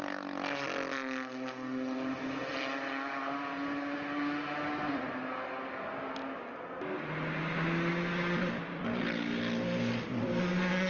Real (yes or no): yes